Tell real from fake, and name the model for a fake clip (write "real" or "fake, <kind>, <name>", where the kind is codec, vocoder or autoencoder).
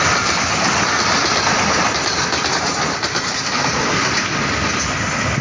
real